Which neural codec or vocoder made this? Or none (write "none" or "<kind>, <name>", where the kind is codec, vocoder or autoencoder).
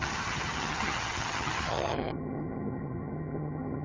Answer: vocoder, HiFi-GAN